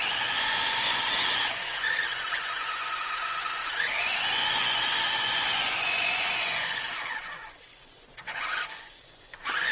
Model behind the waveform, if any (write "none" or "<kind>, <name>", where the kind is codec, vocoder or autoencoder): vocoder, Vocos